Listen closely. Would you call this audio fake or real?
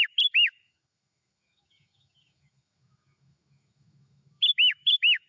fake